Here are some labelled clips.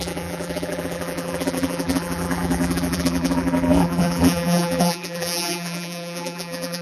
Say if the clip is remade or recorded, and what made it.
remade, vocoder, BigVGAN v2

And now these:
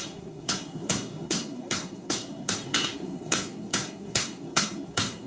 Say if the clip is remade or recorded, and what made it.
remade, codec, SNAC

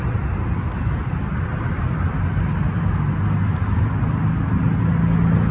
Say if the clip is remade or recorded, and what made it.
recorded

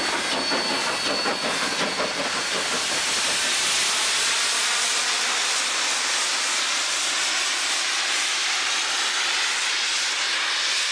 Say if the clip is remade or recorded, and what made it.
recorded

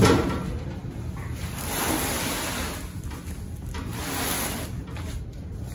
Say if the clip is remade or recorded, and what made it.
recorded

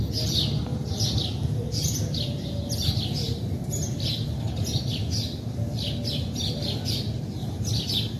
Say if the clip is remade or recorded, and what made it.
recorded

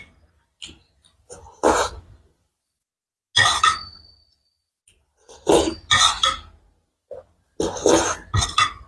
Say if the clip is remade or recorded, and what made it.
recorded